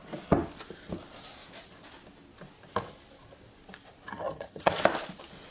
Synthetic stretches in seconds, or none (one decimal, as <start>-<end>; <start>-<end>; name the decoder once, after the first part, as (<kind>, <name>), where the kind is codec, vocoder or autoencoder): 4.1-4.8 (vocoder, HiFi-GAN)